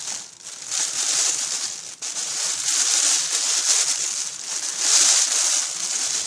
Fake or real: real